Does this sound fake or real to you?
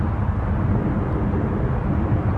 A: real